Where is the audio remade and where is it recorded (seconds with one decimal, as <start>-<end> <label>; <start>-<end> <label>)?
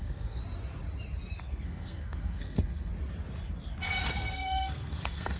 0.0-0.4 remade; 0.4-1.4 recorded; 1.4-2.9 remade; 2.9-4.1 recorded; 4.1-5.4 remade